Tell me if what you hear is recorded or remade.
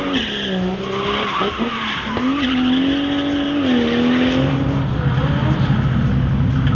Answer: recorded